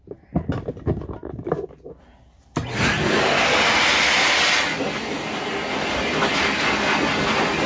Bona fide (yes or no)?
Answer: yes